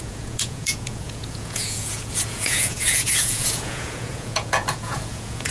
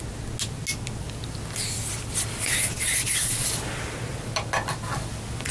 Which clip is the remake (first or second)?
first